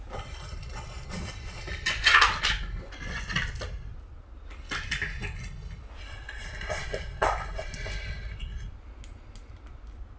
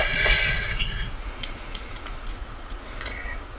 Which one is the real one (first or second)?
first